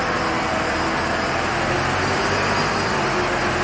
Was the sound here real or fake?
real